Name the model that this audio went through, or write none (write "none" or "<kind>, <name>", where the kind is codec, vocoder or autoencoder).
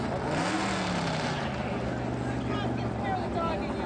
none